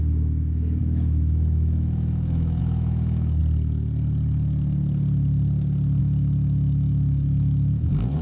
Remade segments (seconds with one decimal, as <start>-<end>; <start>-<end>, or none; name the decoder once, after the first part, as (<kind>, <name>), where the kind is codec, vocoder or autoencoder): 0.0-3.4 (autoencoder, DAC-VAE); 6.0-8.2